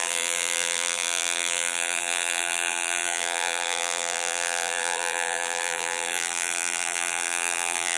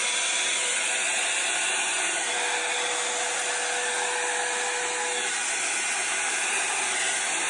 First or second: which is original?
second